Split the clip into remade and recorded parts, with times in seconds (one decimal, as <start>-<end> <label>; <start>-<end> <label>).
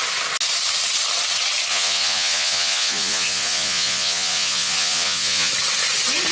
0.0-1.7 recorded; 1.7-5.5 remade; 5.5-6.3 recorded